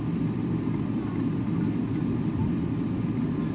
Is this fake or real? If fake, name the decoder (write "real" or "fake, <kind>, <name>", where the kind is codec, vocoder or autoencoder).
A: fake, vocoder, BigVGAN v2